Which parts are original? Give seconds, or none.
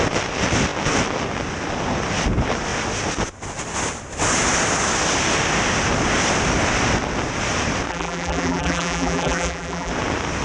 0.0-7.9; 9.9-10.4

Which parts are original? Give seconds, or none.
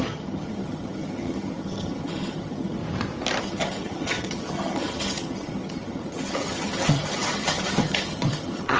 2.8-3.4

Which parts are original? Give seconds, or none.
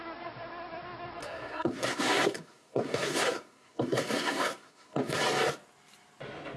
0.0-1.2; 5.2-6.6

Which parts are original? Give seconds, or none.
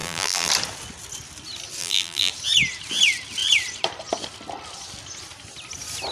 0.5-1.8; 2.3-6.1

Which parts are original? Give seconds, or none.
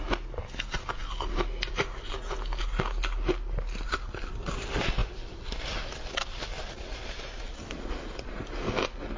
0.0-9.2